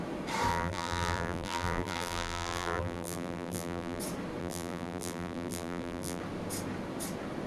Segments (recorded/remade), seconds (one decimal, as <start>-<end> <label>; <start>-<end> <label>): 0.0-0.5 recorded; 0.5-4.0 remade; 4.0-4.4 recorded; 4.4-6.2 remade; 6.2-7.5 recorded